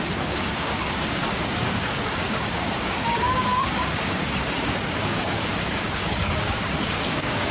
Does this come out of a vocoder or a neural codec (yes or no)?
yes